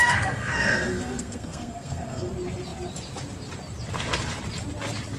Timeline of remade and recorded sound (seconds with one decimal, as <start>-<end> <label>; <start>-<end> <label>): 0.0-2.3 remade; 2.3-5.2 recorded